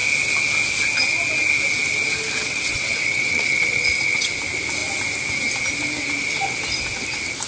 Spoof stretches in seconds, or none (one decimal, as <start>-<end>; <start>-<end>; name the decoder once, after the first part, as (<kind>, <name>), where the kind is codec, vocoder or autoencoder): 2.4-4.3 (vocoder, WaveNeXt)